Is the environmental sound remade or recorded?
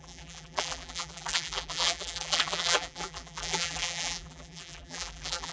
remade